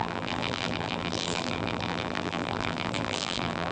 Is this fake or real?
fake